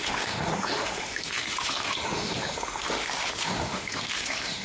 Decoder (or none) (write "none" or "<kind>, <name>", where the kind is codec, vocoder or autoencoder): autoencoder, DAC-VAE